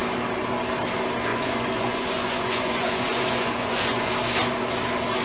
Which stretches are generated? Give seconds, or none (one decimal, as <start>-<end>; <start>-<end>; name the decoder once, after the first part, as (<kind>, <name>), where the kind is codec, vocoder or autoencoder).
1.3-4.1 (vocoder, Vocos)